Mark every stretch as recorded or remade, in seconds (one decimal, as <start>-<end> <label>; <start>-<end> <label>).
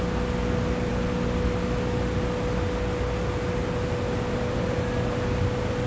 0.0-5.9 recorded